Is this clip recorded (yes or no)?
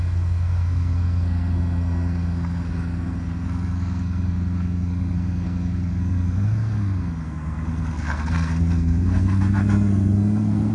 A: no